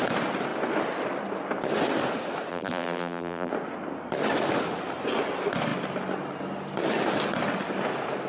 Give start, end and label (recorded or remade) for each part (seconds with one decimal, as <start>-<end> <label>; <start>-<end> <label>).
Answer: 0.0-2.5 recorded; 2.5-3.5 remade; 3.5-8.3 recorded